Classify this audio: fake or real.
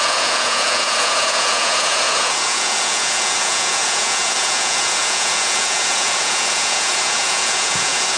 fake